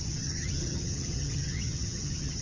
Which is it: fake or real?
fake